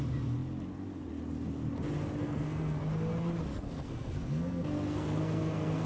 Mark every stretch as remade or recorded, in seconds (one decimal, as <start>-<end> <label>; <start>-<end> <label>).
0.0-2.2 recorded; 2.2-2.8 remade; 2.8-3.5 recorded; 3.5-5.9 remade